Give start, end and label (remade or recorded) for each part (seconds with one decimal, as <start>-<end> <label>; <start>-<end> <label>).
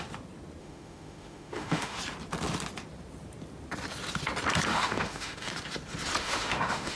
0.0-0.6 recorded; 0.6-2.0 remade; 2.0-4.7 recorded; 4.7-5.5 remade; 5.5-6.2 recorded; 6.2-7.0 remade